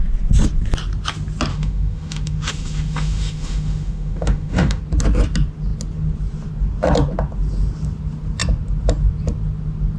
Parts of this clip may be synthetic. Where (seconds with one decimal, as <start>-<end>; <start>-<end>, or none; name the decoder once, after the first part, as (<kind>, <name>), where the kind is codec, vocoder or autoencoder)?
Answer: 1.5-4.8 (autoencoder, DAC-VAE)